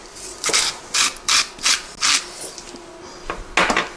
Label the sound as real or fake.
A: real